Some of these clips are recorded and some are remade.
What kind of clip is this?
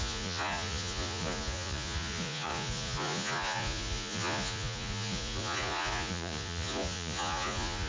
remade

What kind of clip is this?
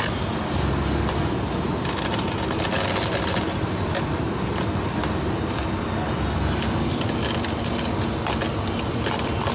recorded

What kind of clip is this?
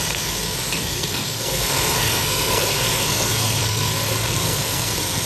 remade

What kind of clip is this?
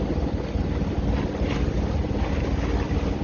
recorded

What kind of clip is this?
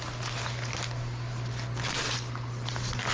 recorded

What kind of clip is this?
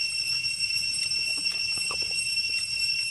recorded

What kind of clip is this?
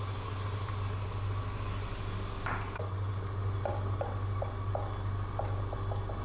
recorded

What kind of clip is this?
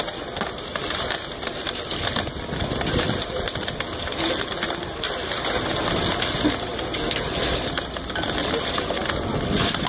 recorded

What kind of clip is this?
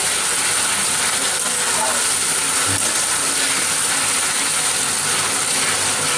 recorded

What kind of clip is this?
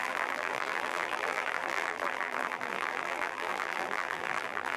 remade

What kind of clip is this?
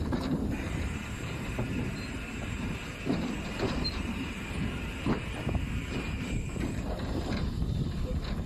remade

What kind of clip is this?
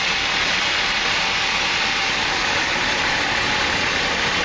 recorded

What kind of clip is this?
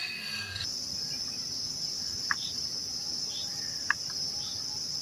recorded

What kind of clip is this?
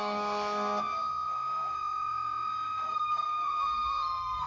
remade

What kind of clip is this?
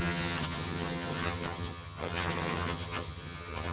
remade